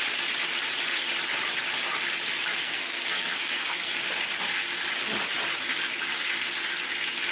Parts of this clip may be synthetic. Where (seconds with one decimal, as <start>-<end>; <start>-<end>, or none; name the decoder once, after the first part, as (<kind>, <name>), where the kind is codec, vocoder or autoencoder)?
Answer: 2.6-3.9 (codec, SNAC)